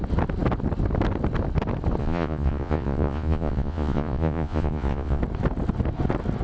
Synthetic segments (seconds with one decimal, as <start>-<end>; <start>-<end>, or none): 2.0-5.2